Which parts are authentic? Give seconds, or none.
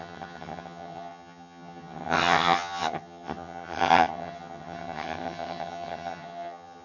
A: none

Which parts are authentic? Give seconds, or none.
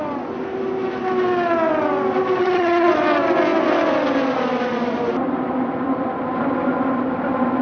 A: 0.0-2.4; 2.9-7.6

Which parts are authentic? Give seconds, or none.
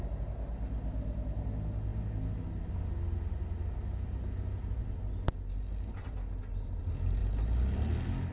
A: 0.0-8.3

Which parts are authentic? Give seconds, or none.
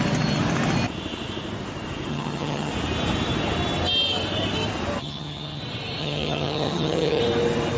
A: 0.0-2.1; 2.7-5.0; 5.6-6.0; 7.2-7.8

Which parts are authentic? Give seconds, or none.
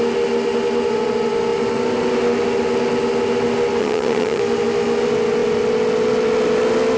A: 0.0-3.8; 4.4-7.0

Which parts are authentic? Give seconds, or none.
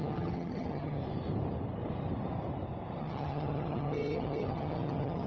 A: 1.0-3.0